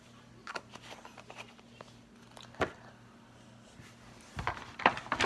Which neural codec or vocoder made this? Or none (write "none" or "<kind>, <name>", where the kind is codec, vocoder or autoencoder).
none